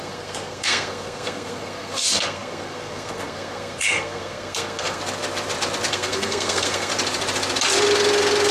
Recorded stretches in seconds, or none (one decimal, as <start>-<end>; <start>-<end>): 5.0-5.9; 6.9-8.5